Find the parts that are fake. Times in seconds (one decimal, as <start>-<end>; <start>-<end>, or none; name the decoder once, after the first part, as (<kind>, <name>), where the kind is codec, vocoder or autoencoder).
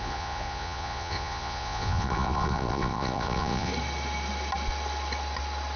0.0-3.7 (vocoder, Vocos)